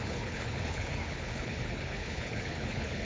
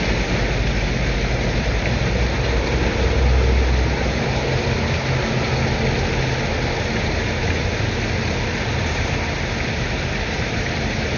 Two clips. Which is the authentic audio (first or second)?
second